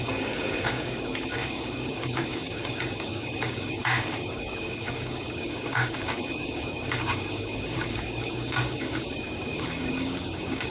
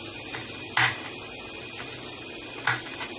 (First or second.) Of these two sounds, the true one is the second